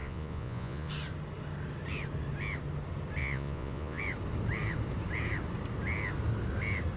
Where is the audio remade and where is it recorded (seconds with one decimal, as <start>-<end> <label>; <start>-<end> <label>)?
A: 0.0-0.9 remade; 0.9-3.2 recorded; 3.2-4.0 remade; 4.0-7.0 recorded